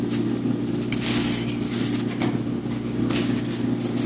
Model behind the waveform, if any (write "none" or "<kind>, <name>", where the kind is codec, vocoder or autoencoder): none